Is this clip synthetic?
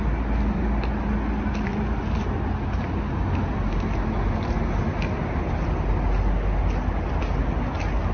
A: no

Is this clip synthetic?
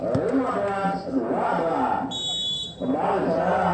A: no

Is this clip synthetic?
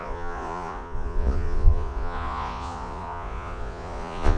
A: yes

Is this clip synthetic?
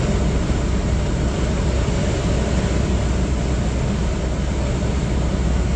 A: no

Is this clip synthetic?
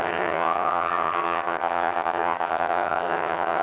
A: yes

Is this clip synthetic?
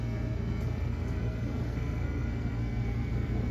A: yes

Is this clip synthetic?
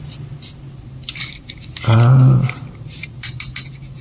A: no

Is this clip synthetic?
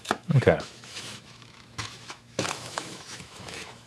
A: yes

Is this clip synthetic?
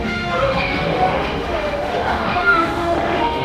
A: yes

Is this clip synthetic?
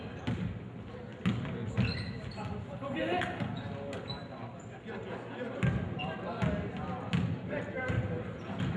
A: no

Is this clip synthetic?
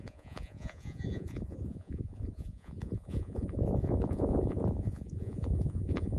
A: yes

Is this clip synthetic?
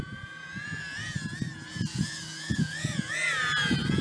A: yes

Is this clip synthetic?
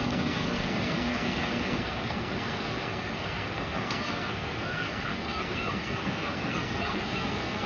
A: yes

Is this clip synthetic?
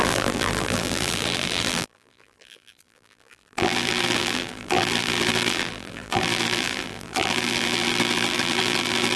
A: yes